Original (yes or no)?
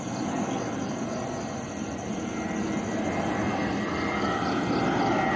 yes